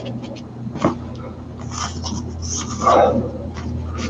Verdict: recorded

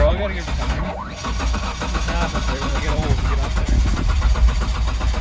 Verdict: remade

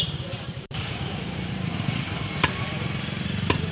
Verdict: remade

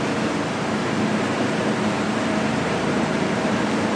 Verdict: remade